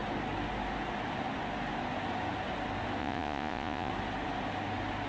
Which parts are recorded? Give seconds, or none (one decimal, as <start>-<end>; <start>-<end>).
0.0-3.0; 3.9-5.1